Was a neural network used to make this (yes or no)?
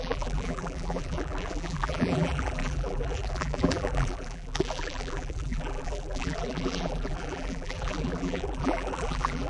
yes